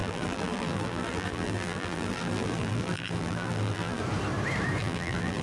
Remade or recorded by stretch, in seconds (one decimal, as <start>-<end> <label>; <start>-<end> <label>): 0.0-4.0 remade; 4.0-4.8 recorded; 4.8-5.4 remade